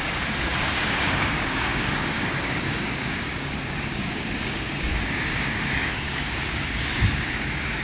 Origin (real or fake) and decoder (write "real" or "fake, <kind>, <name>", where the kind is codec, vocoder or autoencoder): fake, codec, DAC